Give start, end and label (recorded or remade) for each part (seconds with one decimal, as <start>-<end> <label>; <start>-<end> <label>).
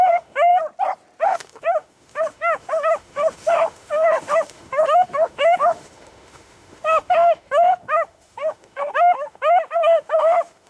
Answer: 0.0-0.5 remade; 0.5-1.2 recorded; 1.2-10.7 remade